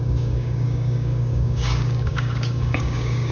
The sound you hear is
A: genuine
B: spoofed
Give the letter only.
B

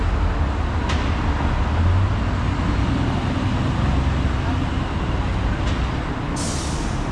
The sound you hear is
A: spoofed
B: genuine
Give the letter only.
B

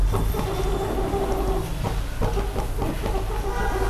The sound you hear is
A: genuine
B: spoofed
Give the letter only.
A